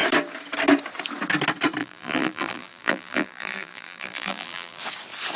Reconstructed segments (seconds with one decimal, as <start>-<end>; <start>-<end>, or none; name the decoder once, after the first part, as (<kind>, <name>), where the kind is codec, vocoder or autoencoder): 1.8-4.8 (vocoder, BigVGAN v2)